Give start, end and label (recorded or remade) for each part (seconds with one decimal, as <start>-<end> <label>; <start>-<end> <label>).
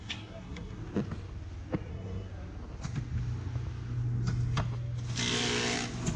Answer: 0.0-0.8 remade; 0.8-1.9 recorded; 1.9-2.3 remade; 2.3-6.2 recorded